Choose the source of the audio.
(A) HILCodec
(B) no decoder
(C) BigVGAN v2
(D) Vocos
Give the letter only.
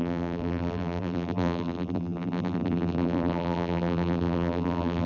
C